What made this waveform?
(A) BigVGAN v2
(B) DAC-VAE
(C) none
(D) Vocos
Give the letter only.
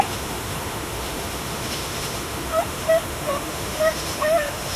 B